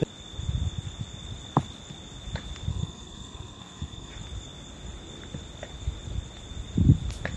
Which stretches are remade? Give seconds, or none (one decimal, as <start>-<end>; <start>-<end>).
2.7-4.1